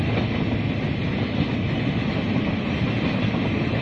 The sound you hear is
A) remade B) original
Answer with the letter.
B